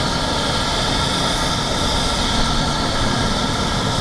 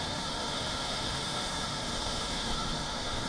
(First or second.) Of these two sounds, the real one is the first